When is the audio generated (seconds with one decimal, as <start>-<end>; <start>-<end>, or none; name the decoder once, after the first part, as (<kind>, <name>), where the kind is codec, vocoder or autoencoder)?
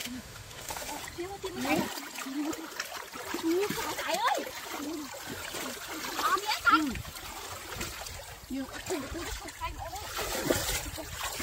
0.0-1.0 (autoencoder, DAC-VAE)